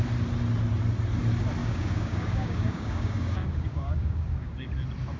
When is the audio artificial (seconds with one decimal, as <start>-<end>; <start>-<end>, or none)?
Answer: 1.6-4.7